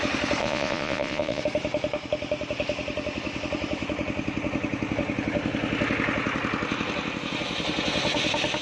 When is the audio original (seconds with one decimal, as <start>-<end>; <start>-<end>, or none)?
0.0-0.4; 1.4-8.6